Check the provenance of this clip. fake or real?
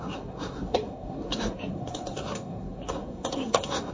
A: fake